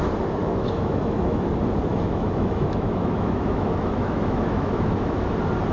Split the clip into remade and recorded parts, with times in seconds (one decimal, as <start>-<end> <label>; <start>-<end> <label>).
0.0-0.4 recorded; 0.4-1.5 remade; 1.5-1.9 recorded; 1.9-5.3 remade; 5.3-5.7 recorded

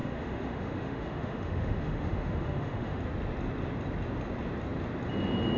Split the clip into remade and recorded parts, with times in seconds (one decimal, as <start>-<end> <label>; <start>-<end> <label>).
0.0-3.0 remade; 3.0-5.6 recorded

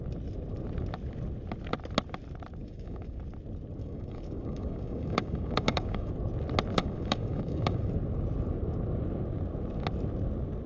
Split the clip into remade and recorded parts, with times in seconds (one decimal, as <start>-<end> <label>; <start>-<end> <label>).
0.0-2.6 recorded; 2.6-3.2 remade; 3.2-3.8 recorded; 3.8-6.1 remade; 6.1-6.8 recorded; 6.8-7.9 remade; 7.9-10.7 recorded